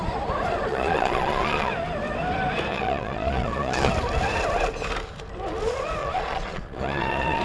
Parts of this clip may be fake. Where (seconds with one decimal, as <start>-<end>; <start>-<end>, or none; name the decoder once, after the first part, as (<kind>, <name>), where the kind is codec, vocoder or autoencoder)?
0.7-1.7 (vocoder, Vocos); 2.7-3.9; 6.0-7.4